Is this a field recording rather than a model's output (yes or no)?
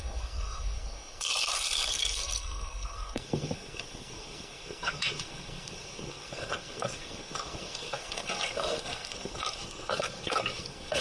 no